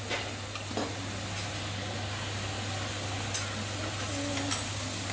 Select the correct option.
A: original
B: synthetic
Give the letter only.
A